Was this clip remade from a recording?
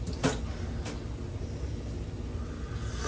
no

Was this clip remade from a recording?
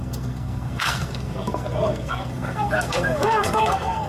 yes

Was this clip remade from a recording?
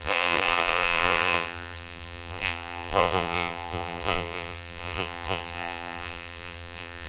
yes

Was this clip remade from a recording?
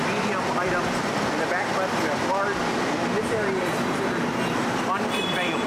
no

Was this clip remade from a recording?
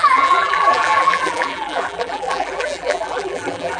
yes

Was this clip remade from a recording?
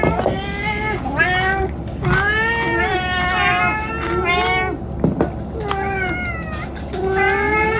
no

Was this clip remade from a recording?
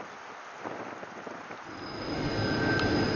no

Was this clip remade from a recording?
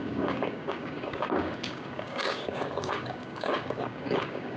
yes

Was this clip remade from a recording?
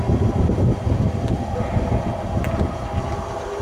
no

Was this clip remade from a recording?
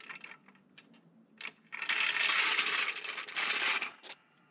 no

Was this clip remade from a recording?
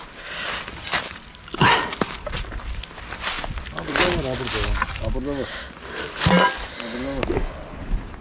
no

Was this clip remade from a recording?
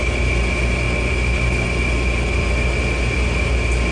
no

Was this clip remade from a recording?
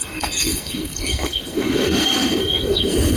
yes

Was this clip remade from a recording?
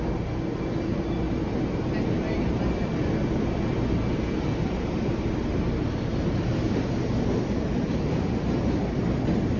no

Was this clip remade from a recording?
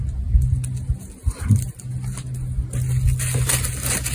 no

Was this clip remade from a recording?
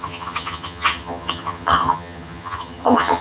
yes